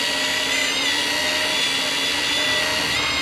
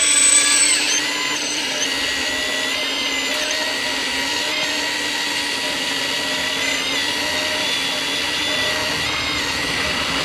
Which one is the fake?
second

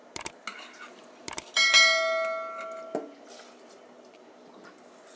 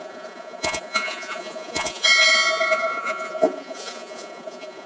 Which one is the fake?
second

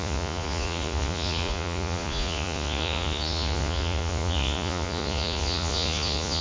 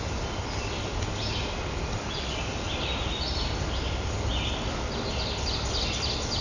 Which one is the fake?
first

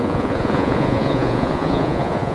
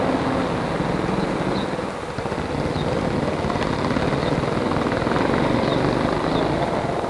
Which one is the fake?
first